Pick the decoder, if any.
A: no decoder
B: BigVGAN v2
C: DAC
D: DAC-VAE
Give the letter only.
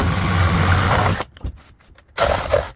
A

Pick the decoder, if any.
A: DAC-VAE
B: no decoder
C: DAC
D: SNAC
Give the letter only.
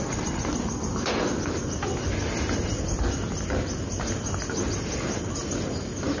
B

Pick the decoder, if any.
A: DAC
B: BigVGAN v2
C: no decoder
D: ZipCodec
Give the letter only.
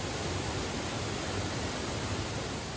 C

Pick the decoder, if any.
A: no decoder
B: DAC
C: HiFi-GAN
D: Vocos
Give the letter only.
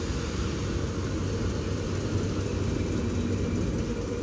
A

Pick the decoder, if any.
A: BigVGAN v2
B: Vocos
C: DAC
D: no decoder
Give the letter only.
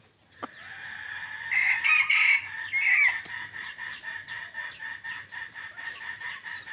D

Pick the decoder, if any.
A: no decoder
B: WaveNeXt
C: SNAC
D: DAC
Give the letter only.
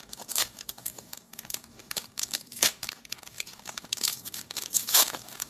D